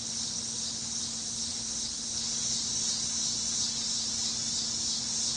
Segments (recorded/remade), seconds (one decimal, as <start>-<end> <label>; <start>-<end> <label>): 0.0-5.4 recorded